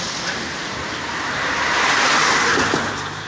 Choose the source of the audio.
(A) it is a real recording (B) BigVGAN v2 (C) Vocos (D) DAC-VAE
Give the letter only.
A